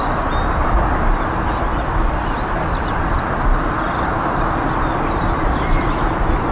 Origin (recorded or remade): recorded